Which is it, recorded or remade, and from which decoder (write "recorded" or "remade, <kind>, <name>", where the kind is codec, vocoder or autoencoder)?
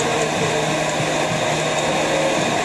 recorded